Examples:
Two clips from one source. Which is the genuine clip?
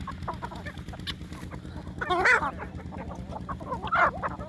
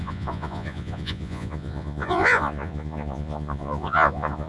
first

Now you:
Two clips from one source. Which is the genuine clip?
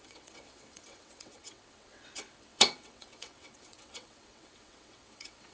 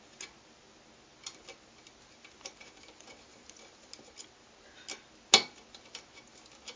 second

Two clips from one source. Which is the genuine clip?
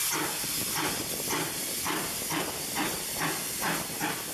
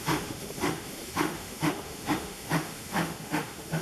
first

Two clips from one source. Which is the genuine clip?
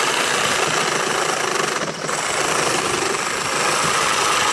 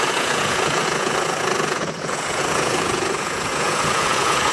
first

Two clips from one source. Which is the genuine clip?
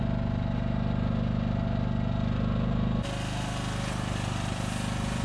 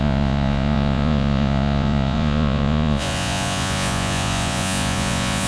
first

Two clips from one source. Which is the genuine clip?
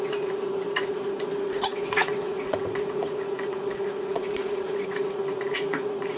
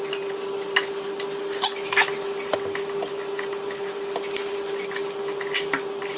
second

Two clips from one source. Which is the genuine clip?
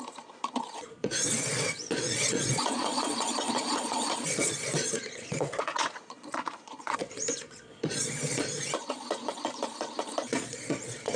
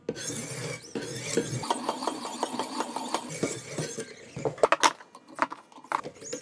second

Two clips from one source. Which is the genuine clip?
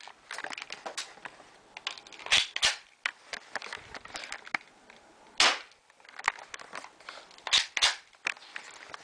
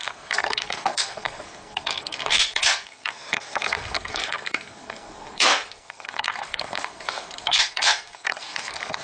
first